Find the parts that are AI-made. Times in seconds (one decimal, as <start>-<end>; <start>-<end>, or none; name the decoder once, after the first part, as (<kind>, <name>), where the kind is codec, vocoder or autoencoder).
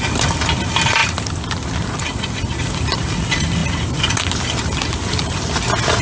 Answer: none